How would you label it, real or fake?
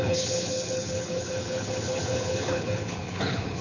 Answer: fake